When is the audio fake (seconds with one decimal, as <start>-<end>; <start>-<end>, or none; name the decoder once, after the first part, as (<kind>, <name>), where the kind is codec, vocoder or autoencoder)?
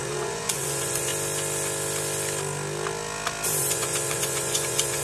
0.0-1.1 (vocoder, Vocos); 3.6-5.0